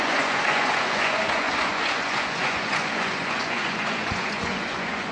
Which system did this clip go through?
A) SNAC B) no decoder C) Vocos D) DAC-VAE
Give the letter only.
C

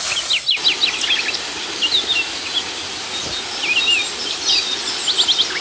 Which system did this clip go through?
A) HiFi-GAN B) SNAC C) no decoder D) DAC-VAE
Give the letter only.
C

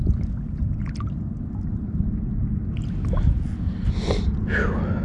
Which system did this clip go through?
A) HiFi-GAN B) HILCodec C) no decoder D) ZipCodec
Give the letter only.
C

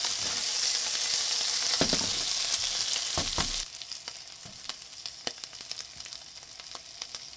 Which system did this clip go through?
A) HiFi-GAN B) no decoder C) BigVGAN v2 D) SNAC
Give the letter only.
B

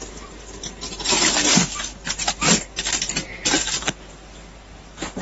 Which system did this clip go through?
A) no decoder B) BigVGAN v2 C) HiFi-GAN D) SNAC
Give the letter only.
B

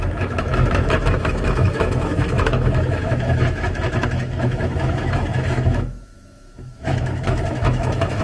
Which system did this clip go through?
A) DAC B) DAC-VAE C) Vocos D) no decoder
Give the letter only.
B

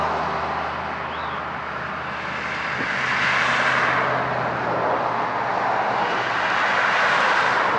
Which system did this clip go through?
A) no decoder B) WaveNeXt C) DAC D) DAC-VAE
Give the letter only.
A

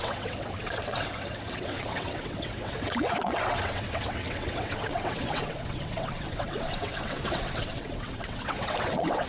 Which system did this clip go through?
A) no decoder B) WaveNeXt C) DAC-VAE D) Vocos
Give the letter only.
B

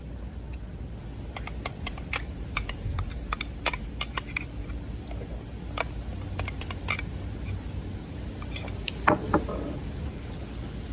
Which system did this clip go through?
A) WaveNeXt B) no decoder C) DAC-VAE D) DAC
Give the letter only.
B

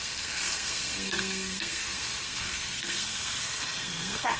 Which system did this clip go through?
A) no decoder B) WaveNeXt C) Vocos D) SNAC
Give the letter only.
D